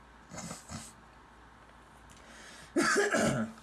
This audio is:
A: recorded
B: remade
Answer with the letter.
A